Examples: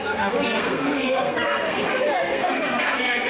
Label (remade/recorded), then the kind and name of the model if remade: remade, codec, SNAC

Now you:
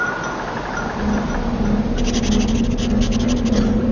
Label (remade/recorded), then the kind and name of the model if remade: recorded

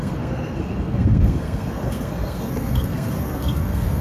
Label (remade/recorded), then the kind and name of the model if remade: remade, codec, SNAC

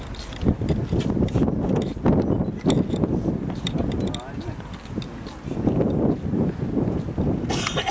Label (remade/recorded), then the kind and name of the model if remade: recorded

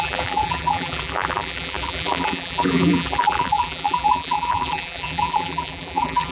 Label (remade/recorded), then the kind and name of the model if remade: remade, vocoder, BigVGAN v2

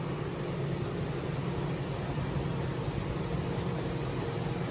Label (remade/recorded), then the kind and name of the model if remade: recorded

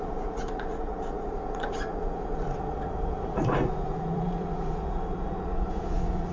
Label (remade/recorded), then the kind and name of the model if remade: remade, vocoder, Vocos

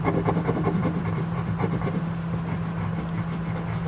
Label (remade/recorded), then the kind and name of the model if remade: recorded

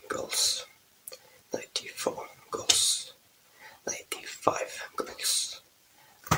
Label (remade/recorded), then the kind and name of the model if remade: remade, vocoder, BigVGAN v2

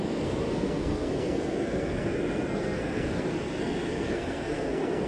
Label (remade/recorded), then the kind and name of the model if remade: remade, codec, SNAC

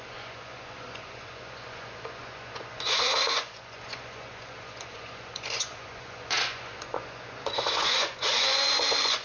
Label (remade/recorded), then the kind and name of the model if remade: remade, vocoder, Vocos